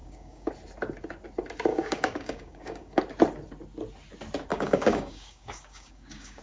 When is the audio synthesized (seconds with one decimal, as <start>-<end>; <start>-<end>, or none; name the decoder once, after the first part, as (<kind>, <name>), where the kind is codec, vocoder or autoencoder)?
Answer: 0.0-0.5 (codec, DAC); 1.7-3.0; 4.5-6.4